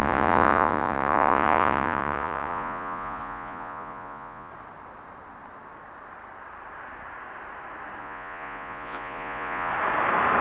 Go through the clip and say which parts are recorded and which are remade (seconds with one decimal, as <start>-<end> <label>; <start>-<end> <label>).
0.0-4.5 remade; 4.5-8.0 recorded; 8.0-9.7 remade; 9.7-10.4 recorded